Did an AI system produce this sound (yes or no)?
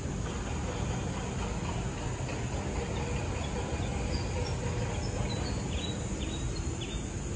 no